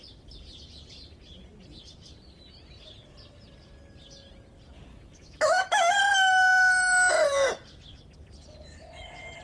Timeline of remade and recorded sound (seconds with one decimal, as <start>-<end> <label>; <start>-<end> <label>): 0.0-4.9 recorded; 4.9-6.0 remade; 6.0-9.4 recorded

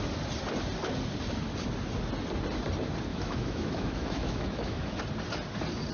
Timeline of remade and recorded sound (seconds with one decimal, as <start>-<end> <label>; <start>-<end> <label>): 0.0-3.1 recorded; 3.1-5.0 remade; 5.0-5.9 recorded

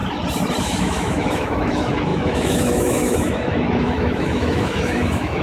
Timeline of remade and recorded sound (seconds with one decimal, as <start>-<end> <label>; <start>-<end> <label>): 0.0-0.6 recorded; 0.6-5.4 remade

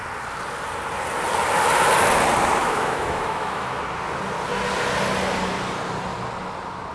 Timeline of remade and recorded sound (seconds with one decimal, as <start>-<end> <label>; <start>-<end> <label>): 0.0-2.6 recorded; 2.6-3.8 remade; 3.8-6.9 recorded

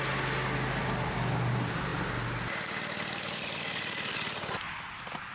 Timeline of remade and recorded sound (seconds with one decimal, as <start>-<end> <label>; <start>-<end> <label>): 0.0-5.3 recorded

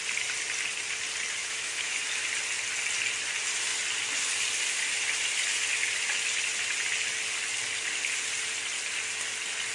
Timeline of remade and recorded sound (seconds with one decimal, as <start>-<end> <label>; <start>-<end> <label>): 0.0-1.4 recorded; 1.4-2.0 remade; 2.0-9.7 recorded